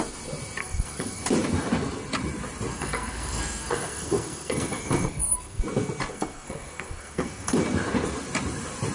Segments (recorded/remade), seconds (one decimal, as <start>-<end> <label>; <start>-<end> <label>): 0.0-0.6 recorded; 0.6-1.2 remade; 1.2-2.7 recorded; 2.7-5.6 remade; 5.6-6.1 recorded; 6.1-7.6 remade; 7.6-8.9 recorded